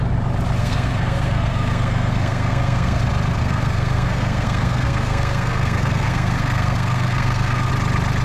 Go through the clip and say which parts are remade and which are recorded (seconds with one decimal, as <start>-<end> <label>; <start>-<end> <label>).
0.0-0.6 recorded; 0.6-3.0 remade; 3.0-3.4 recorded; 3.4-7.7 remade; 7.7-8.2 recorded